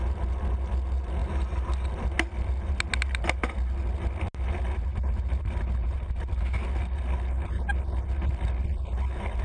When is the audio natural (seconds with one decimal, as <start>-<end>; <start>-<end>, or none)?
0.0-9.4